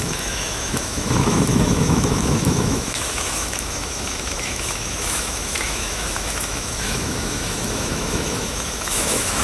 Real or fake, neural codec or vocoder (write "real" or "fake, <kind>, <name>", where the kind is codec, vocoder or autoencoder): fake, autoencoder, DAC-VAE